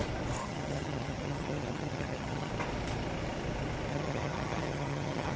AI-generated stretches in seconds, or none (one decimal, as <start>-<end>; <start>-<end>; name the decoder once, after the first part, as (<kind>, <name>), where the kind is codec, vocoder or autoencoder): 0.4-2.5 (vocoder, HiFi-GAN); 3.9-5.4